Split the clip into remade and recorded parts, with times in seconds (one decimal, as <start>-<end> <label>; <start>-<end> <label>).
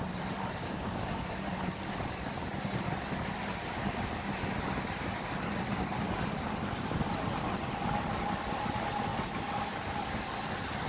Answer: 0.0-0.6 recorded; 0.6-1.4 remade; 1.4-10.9 recorded